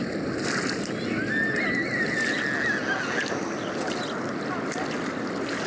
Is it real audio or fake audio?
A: real